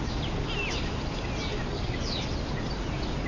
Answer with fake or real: real